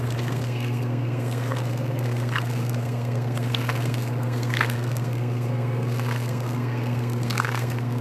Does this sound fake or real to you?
fake